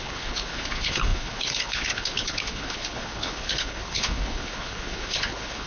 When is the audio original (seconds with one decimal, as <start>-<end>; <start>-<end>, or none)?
none